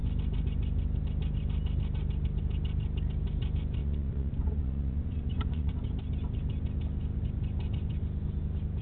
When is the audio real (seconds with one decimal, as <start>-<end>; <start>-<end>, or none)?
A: 0.0-3.8; 5.7-8.8